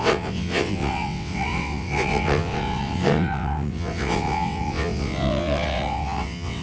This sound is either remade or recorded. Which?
remade